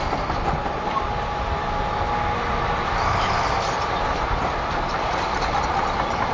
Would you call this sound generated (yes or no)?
no